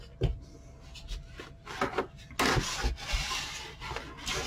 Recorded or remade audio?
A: recorded